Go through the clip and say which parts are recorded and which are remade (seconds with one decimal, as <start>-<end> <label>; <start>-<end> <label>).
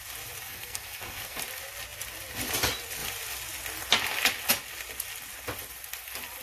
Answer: 0.0-0.4 recorded; 0.4-1.4 remade; 1.4-6.4 recorded